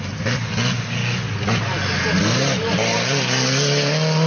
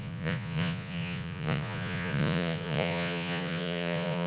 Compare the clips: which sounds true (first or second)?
first